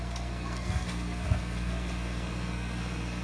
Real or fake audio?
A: fake